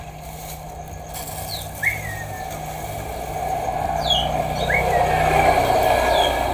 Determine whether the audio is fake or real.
real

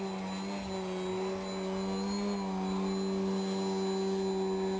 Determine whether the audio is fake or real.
real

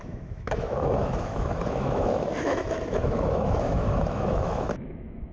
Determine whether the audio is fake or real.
fake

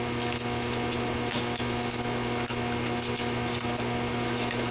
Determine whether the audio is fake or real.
real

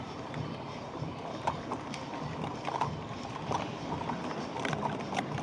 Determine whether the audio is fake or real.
fake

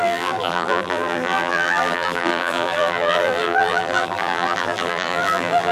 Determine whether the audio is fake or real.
fake